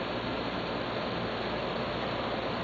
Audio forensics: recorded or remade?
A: recorded